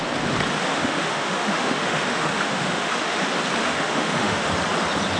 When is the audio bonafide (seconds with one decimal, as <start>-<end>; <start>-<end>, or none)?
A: 0.0-0.7; 3.2-3.6; 4.5-5.2